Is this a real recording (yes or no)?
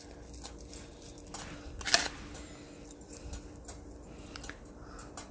yes